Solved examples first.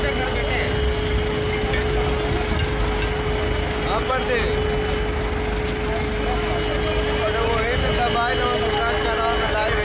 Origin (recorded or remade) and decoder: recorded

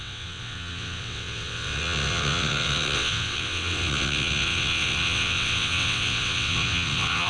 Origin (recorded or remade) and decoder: remade, vocoder, WaveNeXt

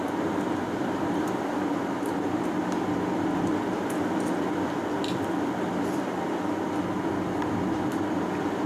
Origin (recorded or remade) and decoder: recorded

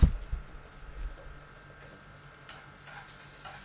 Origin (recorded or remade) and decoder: recorded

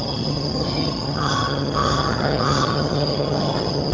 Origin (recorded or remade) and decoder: remade, vocoder, HiFi-GAN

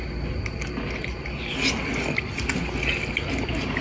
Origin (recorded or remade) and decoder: recorded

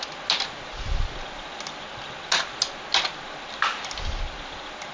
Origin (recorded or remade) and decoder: recorded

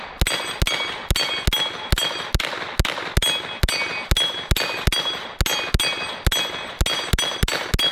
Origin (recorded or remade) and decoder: recorded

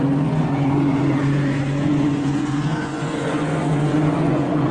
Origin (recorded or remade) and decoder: remade, vocoder, Vocos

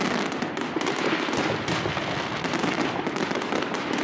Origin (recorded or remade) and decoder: recorded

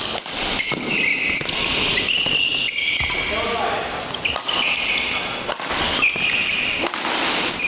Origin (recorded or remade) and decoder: recorded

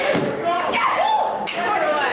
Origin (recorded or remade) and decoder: remade, codec, DAC